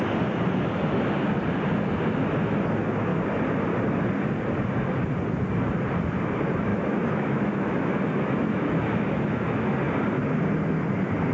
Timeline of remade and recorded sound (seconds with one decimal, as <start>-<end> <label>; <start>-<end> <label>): 0.0-6.7 recorded; 6.7-9.6 remade; 9.6-11.3 recorded